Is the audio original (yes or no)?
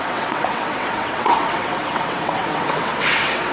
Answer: no